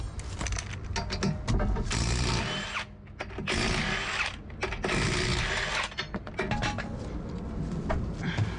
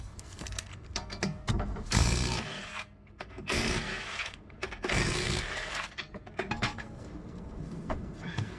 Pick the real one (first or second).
first